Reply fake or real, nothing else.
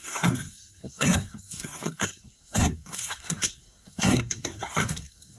fake